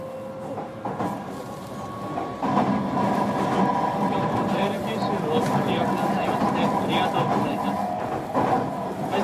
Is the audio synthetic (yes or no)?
no